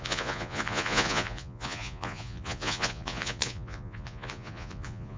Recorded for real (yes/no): no